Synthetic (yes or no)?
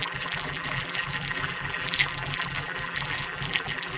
yes